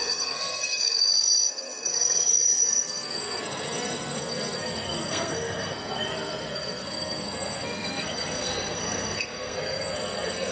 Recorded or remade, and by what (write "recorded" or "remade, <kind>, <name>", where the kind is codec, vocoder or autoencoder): remade, codec, SNAC